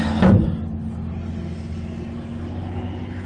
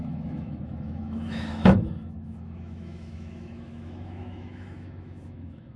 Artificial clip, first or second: second